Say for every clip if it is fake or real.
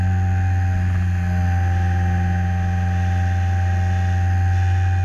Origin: real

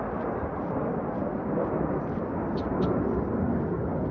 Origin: real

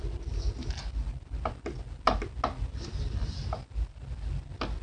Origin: real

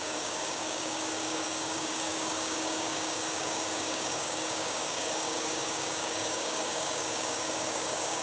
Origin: fake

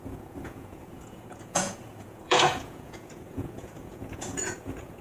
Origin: fake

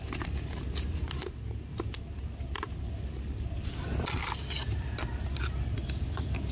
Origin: real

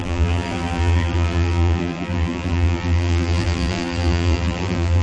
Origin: fake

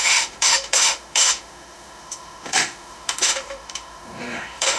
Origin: fake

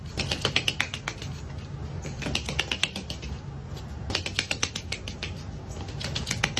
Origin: real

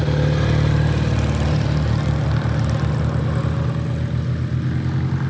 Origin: real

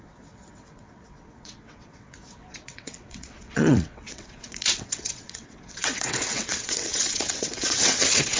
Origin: fake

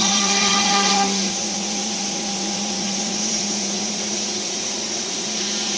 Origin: fake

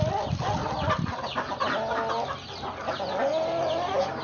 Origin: real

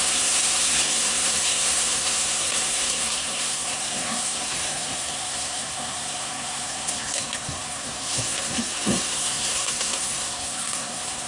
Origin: fake